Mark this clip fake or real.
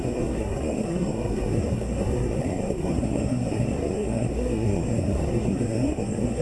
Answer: fake